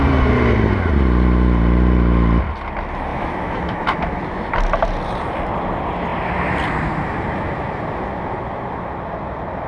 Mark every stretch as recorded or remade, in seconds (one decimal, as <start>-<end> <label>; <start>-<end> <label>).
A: 0.0-3.1 recorded; 3.1-4.2 remade; 4.2-9.7 recorded